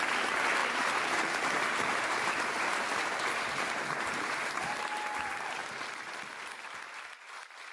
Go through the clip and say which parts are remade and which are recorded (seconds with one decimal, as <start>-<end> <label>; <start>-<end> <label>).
0.0-0.6 recorded; 0.6-4.6 remade; 4.6-7.7 recorded